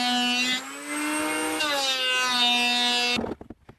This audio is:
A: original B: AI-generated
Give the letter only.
A